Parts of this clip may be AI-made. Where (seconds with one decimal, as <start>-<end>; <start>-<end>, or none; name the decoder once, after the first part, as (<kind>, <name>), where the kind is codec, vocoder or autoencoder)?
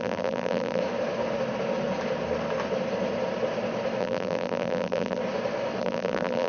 0.0-0.8 (vocoder, BigVGAN v2); 4.0-5.2; 5.8-6.5